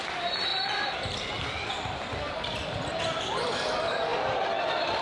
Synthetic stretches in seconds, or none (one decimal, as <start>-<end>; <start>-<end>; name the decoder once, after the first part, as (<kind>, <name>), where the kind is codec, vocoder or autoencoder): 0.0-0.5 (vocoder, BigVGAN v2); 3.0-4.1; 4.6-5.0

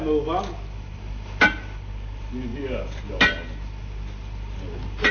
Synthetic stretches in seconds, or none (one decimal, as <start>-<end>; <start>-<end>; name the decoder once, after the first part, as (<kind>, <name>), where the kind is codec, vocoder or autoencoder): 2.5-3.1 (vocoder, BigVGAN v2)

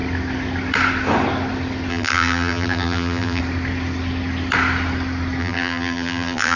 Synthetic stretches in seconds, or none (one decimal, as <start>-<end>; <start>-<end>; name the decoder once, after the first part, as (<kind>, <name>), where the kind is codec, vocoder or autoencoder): 1.9-3.4 (vocoder, BigVGAN v2); 5.4-6.6

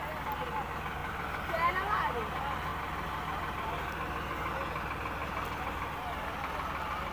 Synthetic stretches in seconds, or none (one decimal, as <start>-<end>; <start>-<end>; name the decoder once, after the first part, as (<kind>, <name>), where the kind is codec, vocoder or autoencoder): 1.0-1.7 (vocoder, BigVGAN v2); 5.2-7.1

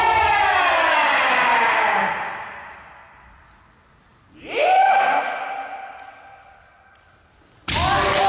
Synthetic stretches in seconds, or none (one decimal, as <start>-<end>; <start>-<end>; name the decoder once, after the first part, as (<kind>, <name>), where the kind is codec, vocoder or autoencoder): none

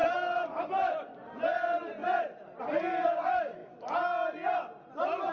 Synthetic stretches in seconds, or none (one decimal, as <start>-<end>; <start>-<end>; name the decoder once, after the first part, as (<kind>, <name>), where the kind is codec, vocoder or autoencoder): 2.0-2.6 (vocoder, BigVGAN v2)